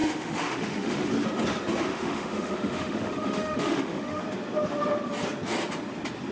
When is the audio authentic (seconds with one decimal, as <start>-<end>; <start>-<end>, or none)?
1.1-1.9; 4.2-6.3